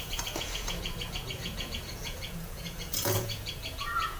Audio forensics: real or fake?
fake